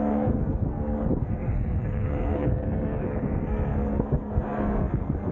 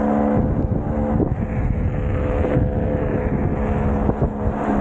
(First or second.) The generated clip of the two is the first